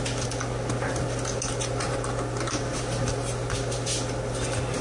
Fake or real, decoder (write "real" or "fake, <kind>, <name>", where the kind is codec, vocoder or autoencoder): real